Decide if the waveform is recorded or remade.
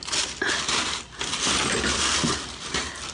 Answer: recorded